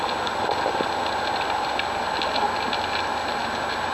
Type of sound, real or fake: real